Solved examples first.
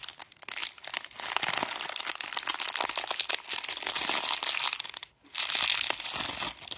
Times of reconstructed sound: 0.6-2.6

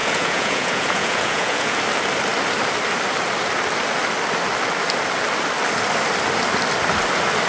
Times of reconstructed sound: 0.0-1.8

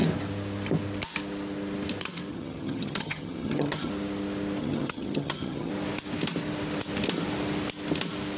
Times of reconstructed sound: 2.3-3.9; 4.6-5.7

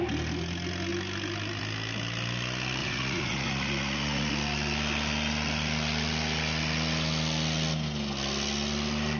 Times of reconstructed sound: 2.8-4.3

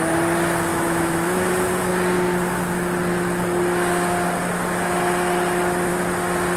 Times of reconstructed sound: 0.7-1.5